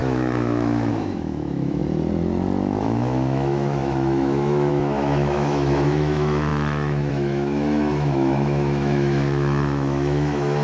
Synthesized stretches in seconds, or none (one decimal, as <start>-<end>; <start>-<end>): 0.0-1.8; 2.8-10.6